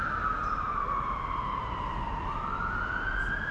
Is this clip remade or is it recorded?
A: recorded